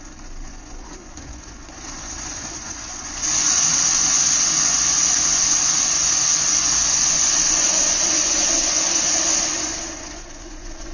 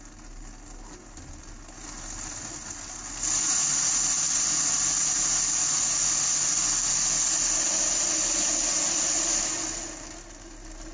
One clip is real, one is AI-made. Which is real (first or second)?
second